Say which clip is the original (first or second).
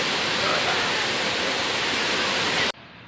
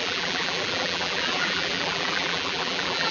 first